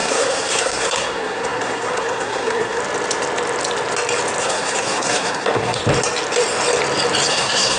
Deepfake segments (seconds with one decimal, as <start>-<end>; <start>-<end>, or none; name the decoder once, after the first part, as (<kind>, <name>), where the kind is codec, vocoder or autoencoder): 0.0-2.8 (codec, SNAC); 4.4-5.8; 7.3-7.8